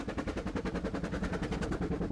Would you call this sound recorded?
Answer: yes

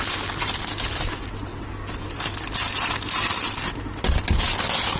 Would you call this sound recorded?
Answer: yes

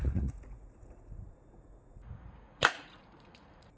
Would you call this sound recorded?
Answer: no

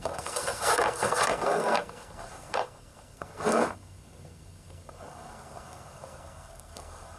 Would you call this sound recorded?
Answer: no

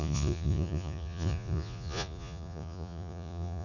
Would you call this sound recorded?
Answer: no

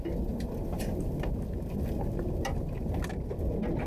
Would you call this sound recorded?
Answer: yes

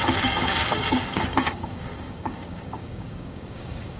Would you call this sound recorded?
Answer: no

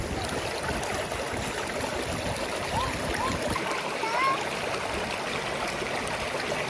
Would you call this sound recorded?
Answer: yes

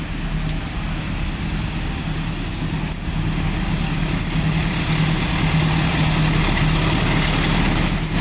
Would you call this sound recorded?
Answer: yes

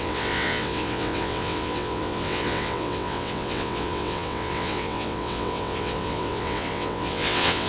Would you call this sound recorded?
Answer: no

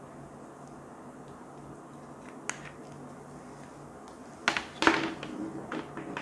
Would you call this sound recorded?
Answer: yes